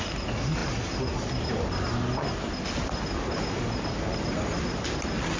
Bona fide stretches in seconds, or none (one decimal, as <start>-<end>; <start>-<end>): 0.0-5.4